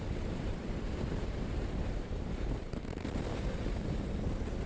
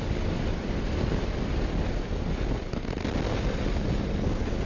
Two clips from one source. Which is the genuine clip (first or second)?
second